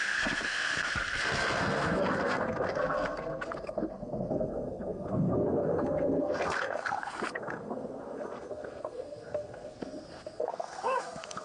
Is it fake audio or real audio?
fake